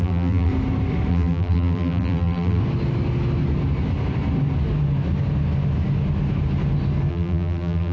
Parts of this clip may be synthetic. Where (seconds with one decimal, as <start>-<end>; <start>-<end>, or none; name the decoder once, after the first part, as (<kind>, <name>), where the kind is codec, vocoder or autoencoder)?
0.0-0.5 (vocoder, BigVGAN v2); 1.1-2.6; 7.1-7.9